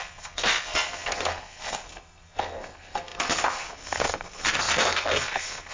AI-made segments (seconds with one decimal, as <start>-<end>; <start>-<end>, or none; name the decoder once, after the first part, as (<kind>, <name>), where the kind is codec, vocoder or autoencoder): 0.0-5.7 (codec, SNAC)